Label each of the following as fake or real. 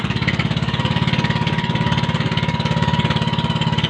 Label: fake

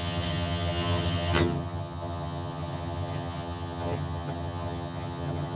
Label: fake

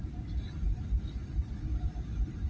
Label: real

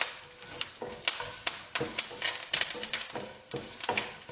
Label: real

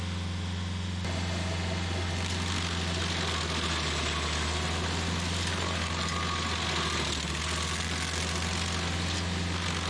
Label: real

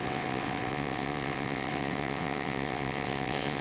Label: fake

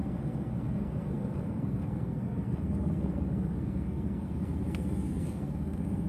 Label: fake